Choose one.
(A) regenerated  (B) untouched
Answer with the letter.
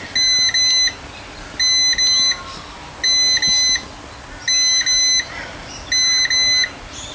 B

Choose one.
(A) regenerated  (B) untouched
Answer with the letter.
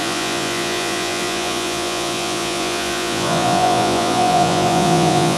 A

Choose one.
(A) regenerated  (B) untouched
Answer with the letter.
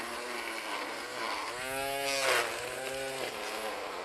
B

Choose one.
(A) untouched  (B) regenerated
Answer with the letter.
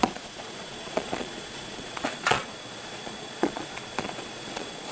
B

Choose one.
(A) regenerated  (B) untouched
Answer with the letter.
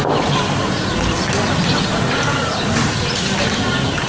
B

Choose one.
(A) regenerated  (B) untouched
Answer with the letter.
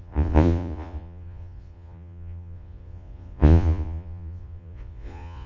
A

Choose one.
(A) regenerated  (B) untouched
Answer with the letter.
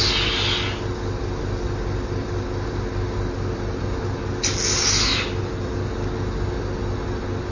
B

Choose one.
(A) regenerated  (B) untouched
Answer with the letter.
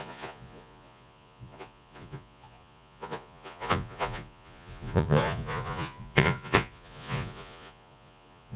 A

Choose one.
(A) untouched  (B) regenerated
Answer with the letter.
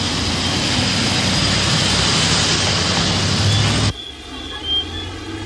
A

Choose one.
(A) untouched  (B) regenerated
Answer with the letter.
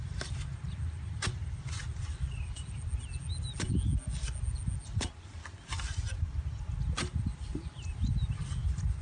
A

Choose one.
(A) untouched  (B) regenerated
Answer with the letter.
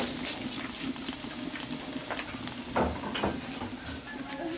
A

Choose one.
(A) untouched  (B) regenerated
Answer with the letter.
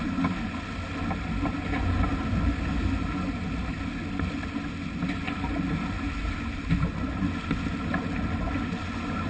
A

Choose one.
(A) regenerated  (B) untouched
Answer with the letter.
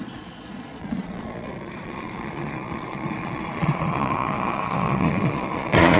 A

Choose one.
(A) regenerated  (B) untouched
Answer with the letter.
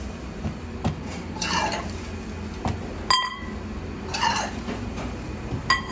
B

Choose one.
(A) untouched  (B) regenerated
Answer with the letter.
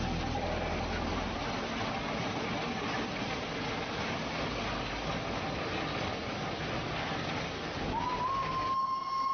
A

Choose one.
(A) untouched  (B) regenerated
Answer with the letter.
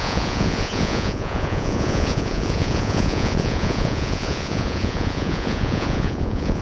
B